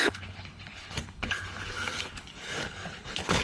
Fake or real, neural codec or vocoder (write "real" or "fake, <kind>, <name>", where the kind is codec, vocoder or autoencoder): fake, codec, HILCodec